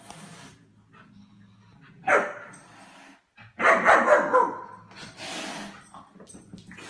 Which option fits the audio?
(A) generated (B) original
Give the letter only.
B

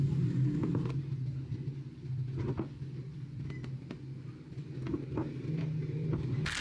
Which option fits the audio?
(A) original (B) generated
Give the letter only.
A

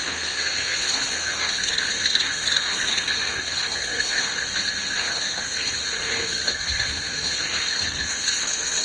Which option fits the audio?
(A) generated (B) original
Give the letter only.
A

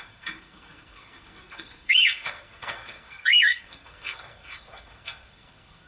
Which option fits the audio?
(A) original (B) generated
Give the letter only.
B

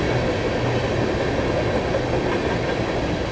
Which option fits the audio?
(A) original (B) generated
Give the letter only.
A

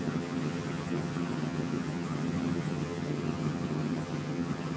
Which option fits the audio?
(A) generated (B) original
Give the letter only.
A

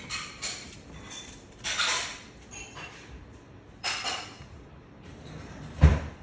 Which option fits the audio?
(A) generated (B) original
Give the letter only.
A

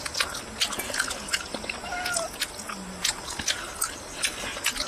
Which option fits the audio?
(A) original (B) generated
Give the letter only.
A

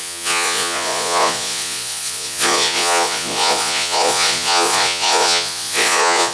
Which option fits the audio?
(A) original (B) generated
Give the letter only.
B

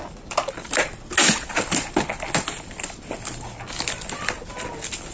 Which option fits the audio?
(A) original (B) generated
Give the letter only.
A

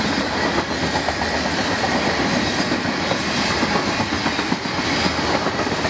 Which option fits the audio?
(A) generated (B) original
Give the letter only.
B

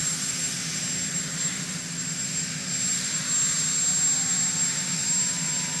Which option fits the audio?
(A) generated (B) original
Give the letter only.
B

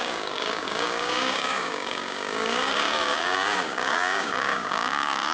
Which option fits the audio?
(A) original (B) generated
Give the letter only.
B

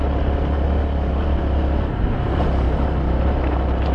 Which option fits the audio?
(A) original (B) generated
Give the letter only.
A